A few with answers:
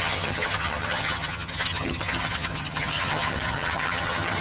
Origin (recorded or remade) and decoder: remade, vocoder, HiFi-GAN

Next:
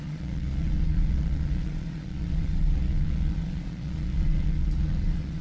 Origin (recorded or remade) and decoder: remade, vocoder, Vocos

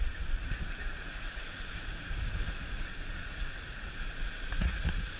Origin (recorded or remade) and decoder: remade, vocoder, Vocos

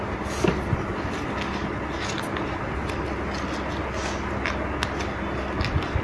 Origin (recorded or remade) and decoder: recorded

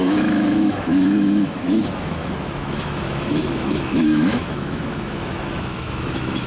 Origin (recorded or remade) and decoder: remade, autoencoder, DAC-VAE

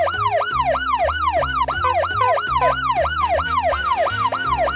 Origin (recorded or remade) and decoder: recorded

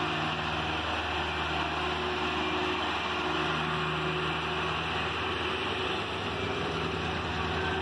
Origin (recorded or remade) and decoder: recorded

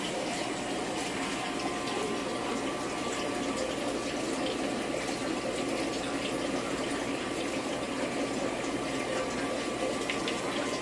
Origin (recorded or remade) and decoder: recorded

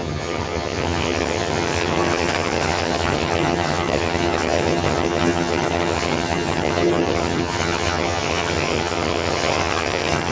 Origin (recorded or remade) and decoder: remade, vocoder, HiFi-GAN